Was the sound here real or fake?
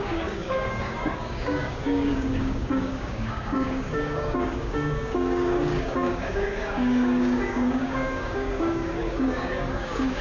fake